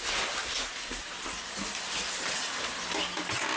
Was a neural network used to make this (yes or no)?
no